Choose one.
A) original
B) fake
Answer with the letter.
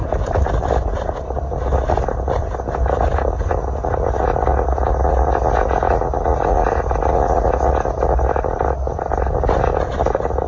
A